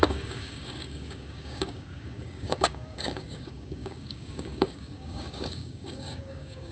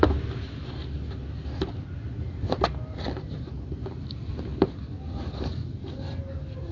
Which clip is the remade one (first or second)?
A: first